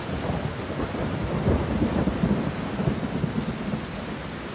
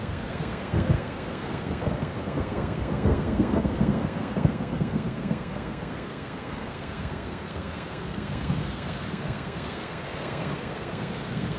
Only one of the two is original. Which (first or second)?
first